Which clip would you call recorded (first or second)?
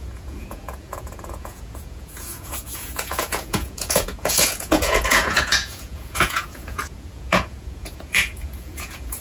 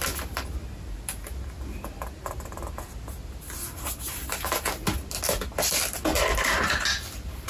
second